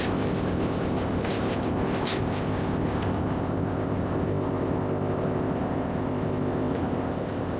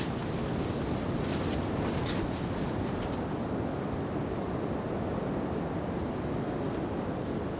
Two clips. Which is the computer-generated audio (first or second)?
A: first